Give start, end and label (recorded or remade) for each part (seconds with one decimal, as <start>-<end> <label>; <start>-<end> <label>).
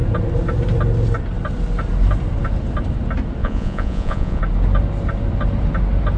0.0-3.4 recorded; 3.4-4.4 remade; 4.4-6.2 recorded